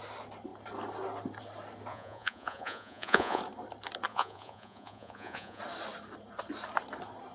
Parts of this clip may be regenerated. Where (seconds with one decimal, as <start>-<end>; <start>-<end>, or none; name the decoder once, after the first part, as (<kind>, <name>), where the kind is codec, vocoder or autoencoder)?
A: 1.9-3.4 (vocoder, Vocos); 4.1-5.6